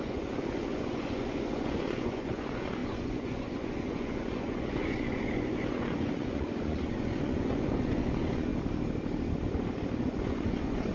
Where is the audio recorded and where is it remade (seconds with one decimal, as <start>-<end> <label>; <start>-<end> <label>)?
0.0-8.5 remade; 8.5-10.0 recorded; 10.0-10.9 remade